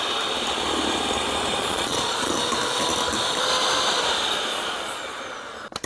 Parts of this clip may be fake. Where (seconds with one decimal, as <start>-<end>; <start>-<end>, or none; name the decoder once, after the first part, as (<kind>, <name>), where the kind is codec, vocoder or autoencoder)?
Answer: 1.6-2.3 (vocoder, Vocos); 4.5-5.2